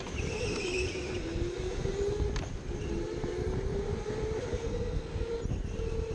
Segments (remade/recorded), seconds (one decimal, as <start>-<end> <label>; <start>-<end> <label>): 0.0-4.5 recorded; 4.5-5.3 remade; 5.3-6.1 recorded